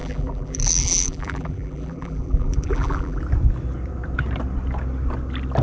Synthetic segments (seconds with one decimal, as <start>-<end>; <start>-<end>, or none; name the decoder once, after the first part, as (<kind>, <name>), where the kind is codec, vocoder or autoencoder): 0.0-3.2 (vocoder, BigVGAN v2)

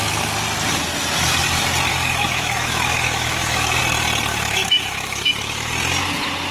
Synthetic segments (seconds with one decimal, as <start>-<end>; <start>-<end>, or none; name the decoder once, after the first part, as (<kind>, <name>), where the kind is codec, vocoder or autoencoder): 1.9-3.8 (autoencoder, DAC-VAE); 4.3-5.7

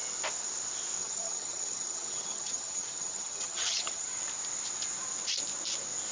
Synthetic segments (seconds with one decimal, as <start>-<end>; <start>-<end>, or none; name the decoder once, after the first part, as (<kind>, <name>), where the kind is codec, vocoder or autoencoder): 1.0-4.2 (vocoder, HiFi-GAN)

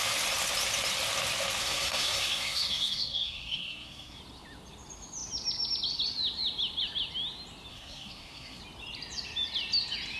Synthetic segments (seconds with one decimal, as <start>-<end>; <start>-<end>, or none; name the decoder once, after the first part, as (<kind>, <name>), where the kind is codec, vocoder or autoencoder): 1.6-4.2 (codec, SNAC); 7.7-8.6

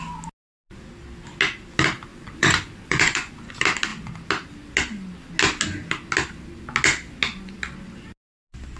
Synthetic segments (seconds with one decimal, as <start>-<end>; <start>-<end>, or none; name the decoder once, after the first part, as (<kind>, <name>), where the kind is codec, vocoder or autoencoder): 2.1-3.5 (vocoder, Vocos)